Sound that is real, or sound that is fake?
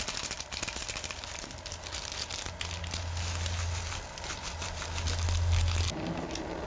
real